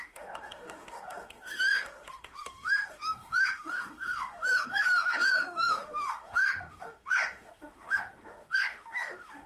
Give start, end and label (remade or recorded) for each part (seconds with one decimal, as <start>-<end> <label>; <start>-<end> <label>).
0.0-9.5 remade